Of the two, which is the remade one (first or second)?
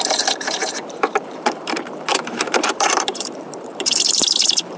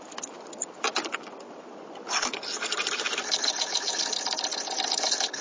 first